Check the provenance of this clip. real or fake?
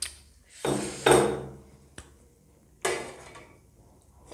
real